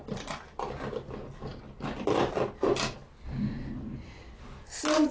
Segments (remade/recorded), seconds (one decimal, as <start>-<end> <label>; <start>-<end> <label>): 0.0-5.1 recorded